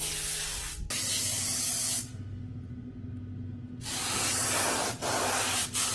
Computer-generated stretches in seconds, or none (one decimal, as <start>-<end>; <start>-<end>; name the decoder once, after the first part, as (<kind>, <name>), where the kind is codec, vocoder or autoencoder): none